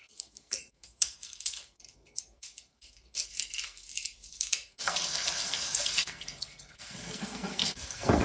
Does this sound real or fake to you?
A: fake